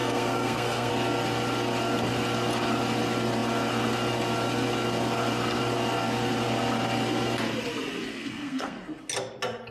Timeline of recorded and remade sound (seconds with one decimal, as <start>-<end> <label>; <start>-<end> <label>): 0.0-0.9 remade; 0.9-8.1 recorded; 8.1-8.8 remade; 8.8-9.7 recorded